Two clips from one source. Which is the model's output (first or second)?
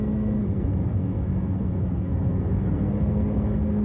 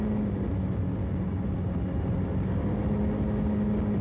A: first